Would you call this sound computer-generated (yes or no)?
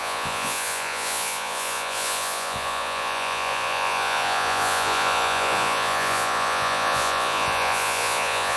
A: yes